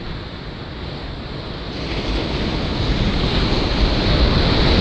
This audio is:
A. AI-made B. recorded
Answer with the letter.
B